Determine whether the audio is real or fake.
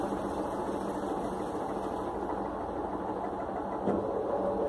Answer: real